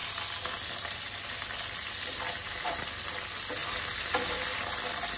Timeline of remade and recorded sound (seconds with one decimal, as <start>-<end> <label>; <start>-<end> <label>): 0.0-5.2 recorded